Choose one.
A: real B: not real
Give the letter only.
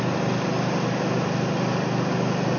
A